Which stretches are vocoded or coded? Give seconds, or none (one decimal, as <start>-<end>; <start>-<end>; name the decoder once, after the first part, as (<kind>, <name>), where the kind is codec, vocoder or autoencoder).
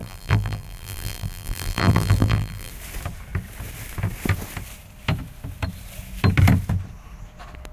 0.0-2.7 (vocoder, BigVGAN v2)